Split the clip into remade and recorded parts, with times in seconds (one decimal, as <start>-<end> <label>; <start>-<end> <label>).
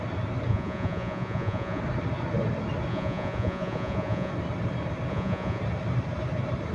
0.0-0.5 recorded; 0.5-1.8 remade; 1.8-2.9 recorded; 2.9-4.3 remade; 4.3-5.1 recorded; 5.1-5.6 remade; 5.6-6.7 recorded